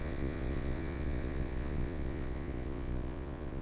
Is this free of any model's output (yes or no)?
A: no